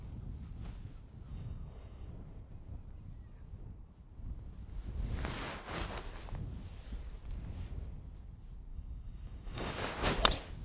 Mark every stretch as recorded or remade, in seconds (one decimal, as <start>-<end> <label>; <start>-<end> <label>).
0.0-1.3 recorded; 1.3-2.1 remade; 2.1-8.7 recorded; 8.7-9.7 remade; 9.7-10.6 recorded